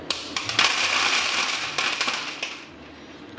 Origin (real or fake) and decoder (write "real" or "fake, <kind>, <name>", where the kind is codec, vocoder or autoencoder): fake, vocoder, BigVGAN v2